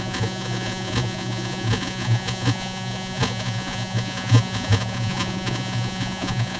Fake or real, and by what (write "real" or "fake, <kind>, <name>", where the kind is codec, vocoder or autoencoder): fake, vocoder, Vocos